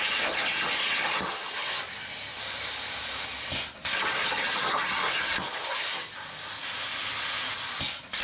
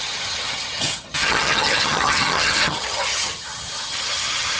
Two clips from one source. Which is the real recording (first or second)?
first